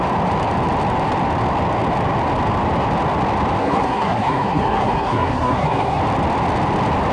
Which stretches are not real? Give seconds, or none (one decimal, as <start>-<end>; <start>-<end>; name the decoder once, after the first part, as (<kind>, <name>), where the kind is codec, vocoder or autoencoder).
3.6-6.0 (codec, SNAC)